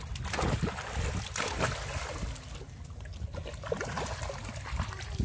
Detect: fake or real real